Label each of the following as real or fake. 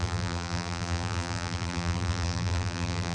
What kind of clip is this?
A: fake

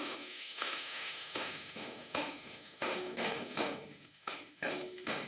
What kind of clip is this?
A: fake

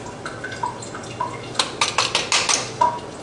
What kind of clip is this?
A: real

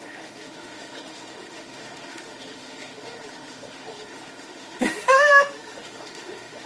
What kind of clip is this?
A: fake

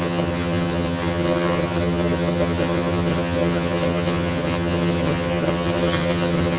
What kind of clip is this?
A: fake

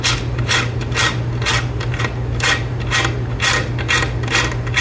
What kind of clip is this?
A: real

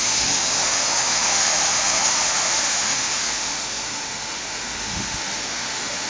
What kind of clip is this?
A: fake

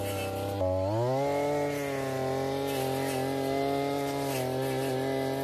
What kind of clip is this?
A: real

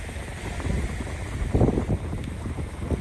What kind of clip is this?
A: real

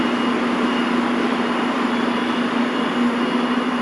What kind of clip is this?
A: real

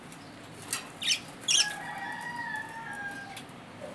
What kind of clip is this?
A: real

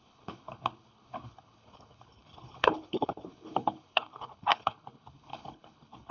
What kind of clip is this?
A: fake